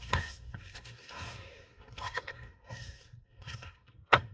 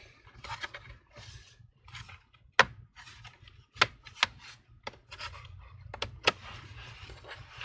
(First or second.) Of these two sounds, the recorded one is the second